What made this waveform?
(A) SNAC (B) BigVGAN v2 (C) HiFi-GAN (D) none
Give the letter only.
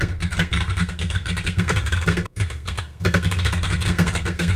A